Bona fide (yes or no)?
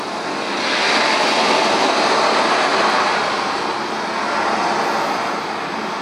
no